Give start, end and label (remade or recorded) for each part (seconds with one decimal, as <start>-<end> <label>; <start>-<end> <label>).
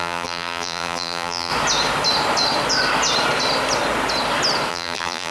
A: 0.0-1.5 remade; 1.5-4.7 recorded; 4.7-5.3 remade